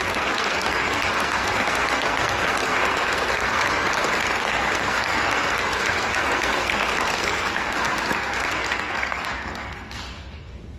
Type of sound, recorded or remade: remade